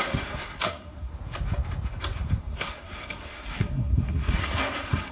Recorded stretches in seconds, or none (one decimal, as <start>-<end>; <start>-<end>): 1.1-2.4